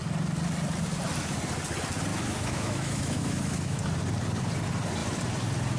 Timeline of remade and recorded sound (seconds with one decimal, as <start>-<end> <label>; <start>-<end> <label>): 0.0-2.1 recorded; 2.1-3.8 remade; 3.8-5.8 recorded